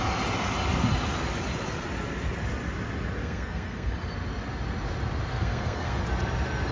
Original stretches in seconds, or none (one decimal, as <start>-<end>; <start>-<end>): 0.0-3.2; 3.9-5.3; 6.0-6.7